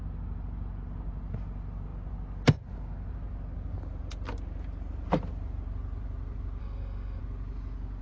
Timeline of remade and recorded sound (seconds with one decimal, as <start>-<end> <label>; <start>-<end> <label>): 0.0-6.6 recorded; 6.6-7.2 remade; 7.2-8.0 recorded